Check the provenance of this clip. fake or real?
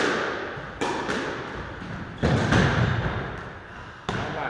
real